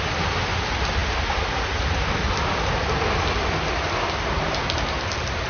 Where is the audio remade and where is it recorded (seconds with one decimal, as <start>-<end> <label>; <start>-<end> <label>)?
0.0-5.5 recorded